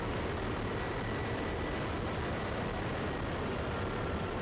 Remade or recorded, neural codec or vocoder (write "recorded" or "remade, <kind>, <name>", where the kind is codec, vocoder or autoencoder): recorded